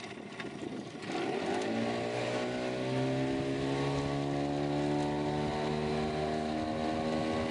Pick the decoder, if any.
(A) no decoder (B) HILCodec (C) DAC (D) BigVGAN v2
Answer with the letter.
A